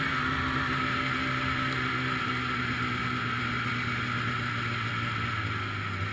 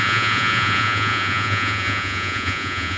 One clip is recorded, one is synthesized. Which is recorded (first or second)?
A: first